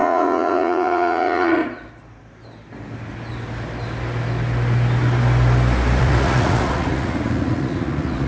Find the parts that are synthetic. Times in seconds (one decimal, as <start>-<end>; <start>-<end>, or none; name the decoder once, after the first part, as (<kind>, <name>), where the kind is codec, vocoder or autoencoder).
0.0-1.6 (vocoder, Vocos); 6.0-8.3